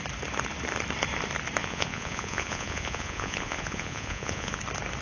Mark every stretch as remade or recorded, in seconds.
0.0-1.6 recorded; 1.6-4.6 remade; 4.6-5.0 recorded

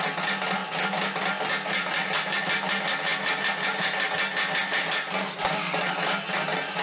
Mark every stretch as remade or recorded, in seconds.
0.0-6.8 recorded

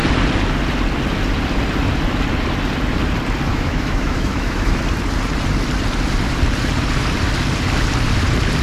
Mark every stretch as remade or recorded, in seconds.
0.0-3.5 recorded; 3.5-4.8 remade; 4.8-8.6 recorded

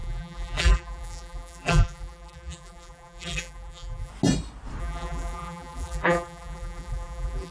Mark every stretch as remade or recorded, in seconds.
0.0-4.1 remade; 4.1-4.8 recorded; 4.8-7.5 remade

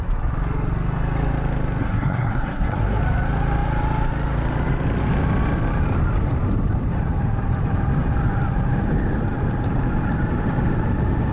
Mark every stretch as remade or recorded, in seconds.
0.0-1.8 recorded; 1.8-3.0 remade; 3.0-11.3 recorded

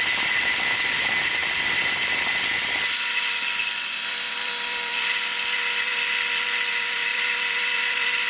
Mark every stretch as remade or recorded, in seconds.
0.0-8.3 remade